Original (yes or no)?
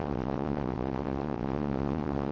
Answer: no